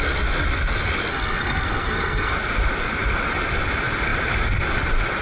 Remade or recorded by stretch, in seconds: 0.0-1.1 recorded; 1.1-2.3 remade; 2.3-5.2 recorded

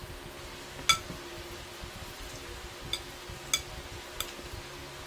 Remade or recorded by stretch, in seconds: 0.0-5.1 recorded

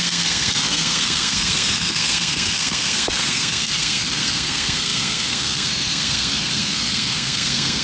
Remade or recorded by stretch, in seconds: 0.0-7.8 remade